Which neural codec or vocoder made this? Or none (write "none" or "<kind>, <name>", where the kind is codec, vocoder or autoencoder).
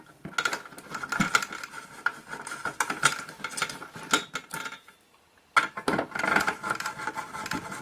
none